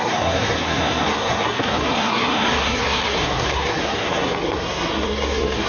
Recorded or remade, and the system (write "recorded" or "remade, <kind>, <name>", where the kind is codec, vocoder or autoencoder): remade, codec, SNAC